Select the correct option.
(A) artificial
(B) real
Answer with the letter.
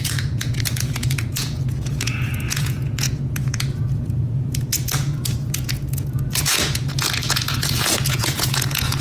A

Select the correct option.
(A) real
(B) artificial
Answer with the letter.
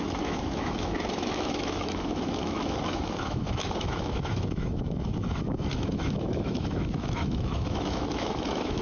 B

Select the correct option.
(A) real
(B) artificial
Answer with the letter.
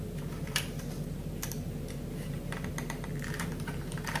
A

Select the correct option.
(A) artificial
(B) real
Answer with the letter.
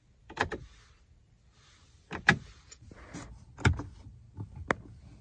B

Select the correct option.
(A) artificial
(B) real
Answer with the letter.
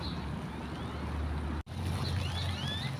B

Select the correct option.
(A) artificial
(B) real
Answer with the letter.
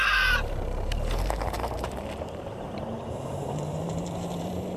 A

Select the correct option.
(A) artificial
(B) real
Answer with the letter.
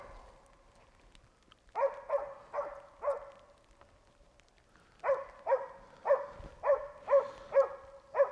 B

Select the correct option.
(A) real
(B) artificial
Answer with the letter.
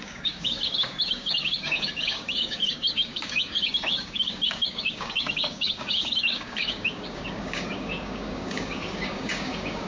B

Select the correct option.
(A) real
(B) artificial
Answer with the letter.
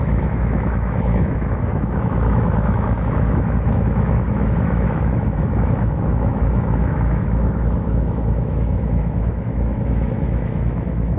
B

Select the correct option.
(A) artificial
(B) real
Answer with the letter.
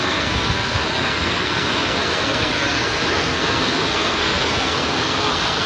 A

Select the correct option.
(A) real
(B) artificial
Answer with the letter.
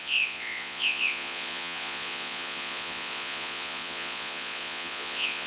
B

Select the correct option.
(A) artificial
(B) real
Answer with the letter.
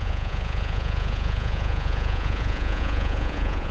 A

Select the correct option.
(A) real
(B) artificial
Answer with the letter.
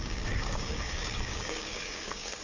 B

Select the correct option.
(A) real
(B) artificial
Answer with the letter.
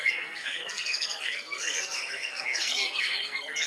B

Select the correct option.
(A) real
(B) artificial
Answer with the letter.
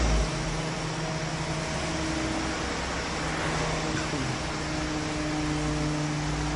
A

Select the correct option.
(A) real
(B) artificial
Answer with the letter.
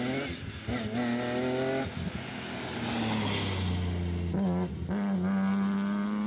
A